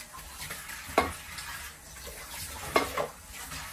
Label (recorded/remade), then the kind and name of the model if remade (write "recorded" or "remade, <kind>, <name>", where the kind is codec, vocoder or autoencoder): recorded